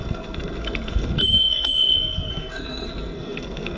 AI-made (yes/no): yes